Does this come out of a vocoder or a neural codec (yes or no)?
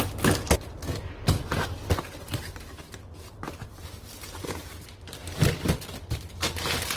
no